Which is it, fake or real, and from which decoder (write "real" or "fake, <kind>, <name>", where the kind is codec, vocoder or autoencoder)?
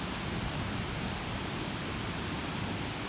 fake, vocoder, BigVGAN v2